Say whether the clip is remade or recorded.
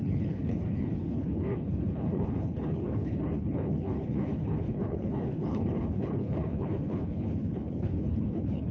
remade